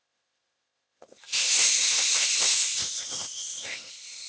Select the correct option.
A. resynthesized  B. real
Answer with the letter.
A